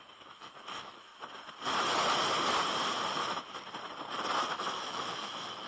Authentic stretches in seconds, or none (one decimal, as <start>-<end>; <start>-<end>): 1.1-4.5